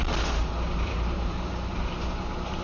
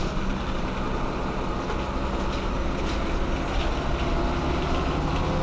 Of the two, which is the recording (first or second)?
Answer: second